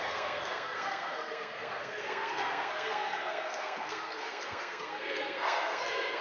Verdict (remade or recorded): remade